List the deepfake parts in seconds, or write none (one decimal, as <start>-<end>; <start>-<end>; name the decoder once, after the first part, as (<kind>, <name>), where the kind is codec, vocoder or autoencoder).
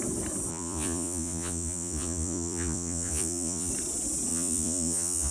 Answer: 0.5-3.7 (vocoder, Vocos); 4.3-5.3